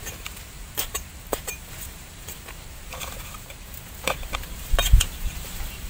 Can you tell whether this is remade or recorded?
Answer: remade